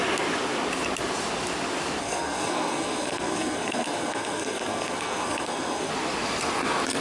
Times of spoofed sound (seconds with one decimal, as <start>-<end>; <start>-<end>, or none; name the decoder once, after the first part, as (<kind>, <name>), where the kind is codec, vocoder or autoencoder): 2.0-5.9 (codec, SNAC)